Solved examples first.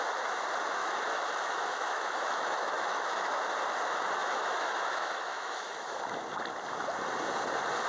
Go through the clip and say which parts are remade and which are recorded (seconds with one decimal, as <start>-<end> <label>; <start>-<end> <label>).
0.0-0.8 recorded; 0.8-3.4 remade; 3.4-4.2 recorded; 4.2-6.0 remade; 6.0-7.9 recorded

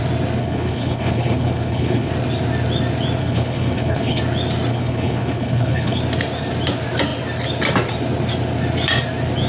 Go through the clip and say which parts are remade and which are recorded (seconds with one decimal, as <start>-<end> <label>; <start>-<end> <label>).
0.0-0.4 recorded; 0.4-2.1 remade; 2.1-3.2 recorded; 3.2-4.2 remade; 4.2-4.7 recorded; 4.7-6.0 remade; 6.0-9.5 recorded

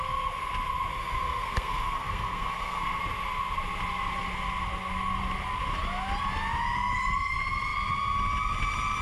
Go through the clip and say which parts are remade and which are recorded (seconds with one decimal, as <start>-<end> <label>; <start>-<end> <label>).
0.0-1.0 recorded; 1.0-3.0 remade; 3.0-9.0 recorded

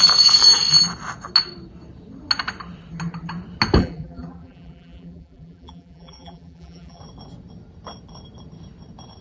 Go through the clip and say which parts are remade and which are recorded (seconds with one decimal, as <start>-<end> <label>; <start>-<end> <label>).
0.0-3.8 recorded; 3.8-7.0 remade; 7.0-9.2 recorded

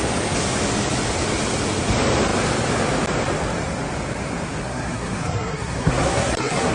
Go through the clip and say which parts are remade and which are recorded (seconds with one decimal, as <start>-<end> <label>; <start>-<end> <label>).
0.0-4.6 recorded; 4.6-6.7 remade